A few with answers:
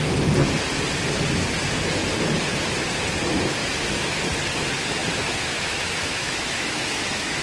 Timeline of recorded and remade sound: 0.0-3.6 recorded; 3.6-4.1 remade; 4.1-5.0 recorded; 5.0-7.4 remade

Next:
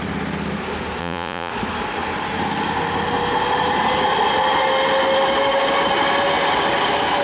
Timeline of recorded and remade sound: 0.0-1.0 recorded; 1.0-1.5 remade; 1.5-7.2 recorded

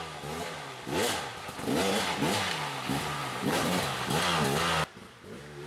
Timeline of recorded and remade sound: 0.0-3.2 recorded; 3.2-3.8 remade; 3.8-5.7 recorded

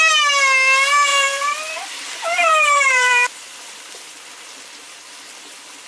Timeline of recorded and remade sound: 0.0-1.1 recorded; 1.1-4.6 remade; 4.6-5.9 recorded

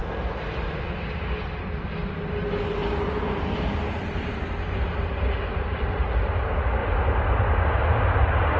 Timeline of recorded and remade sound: 0.0-8.6 recorded

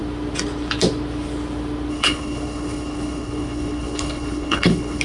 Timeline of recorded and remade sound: 0.0-1.9 recorded; 1.9-5.0 remade